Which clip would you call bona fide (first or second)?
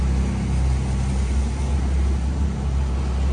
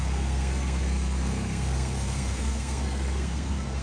first